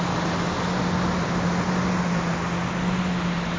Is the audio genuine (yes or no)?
yes